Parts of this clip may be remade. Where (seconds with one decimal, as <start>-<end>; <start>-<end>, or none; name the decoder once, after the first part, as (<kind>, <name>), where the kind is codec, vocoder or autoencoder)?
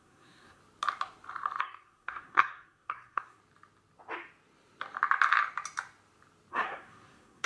0.0-0.6 (codec, SNAC); 1.6-3.4; 6.5-7.5